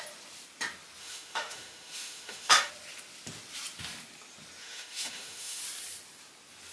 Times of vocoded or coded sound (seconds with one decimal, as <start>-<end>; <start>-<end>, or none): 1.0-2.7; 4.6-5.6